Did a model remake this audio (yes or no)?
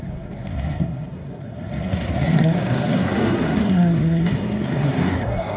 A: yes